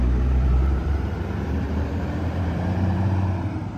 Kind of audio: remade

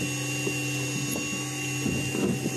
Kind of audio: recorded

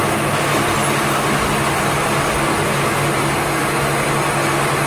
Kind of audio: recorded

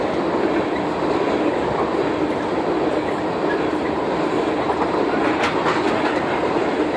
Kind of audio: recorded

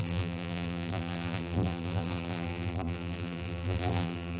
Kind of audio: remade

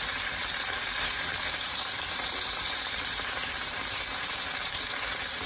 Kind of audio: remade